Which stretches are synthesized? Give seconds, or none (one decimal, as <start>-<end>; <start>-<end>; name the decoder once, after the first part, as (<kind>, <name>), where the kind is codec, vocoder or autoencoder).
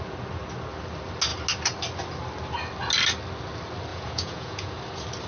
3.9-4.8 (vocoder, Vocos)